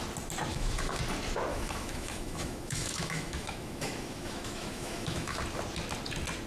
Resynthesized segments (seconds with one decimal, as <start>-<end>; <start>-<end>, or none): 0.5-1.0; 1.5-5.4